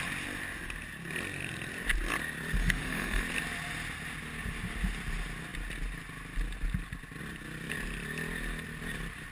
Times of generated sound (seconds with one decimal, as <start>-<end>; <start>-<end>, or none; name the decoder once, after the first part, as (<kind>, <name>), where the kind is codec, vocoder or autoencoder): 2.6-3.2 (autoencoder, DAC-VAE)